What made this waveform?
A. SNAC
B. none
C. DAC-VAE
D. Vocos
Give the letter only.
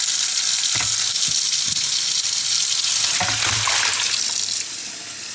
B